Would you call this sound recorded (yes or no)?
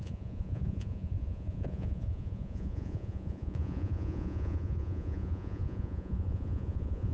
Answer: no